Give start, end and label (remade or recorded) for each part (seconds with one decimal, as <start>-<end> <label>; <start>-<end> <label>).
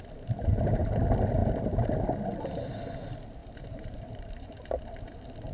0.0-0.5 recorded; 0.5-1.0 remade; 1.0-3.4 recorded; 3.4-4.5 remade; 4.5-5.5 recorded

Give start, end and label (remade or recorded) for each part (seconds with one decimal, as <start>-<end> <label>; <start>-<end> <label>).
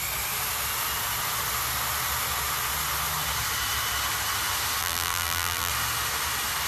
0.0-4.8 recorded; 4.8-5.7 remade; 5.7-6.7 recorded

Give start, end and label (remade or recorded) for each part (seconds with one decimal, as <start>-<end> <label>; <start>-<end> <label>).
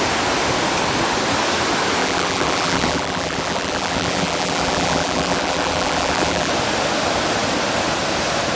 0.0-2.0 recorded; 2.0-6.5 remade; 6.5-8.6 recorded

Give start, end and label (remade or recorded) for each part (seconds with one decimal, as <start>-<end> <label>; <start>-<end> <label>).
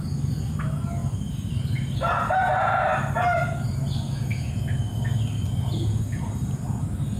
0.0-1.0 recorded; 1.0-2.1 remade; 2.1-7.2 recorded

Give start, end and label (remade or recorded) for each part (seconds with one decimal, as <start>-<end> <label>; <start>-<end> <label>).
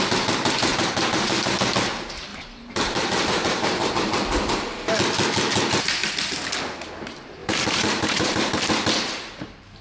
0.0-0.7 recorded; 0.7-1.6 remade; 1.6-2.3 recorded; 2.3-3.9 remade; 3.9-7.4 recorded; 7.4-8.7 remade; 8.7-9.8 recorded